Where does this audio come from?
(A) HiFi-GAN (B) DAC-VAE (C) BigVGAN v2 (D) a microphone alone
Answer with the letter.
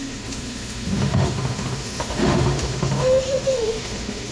B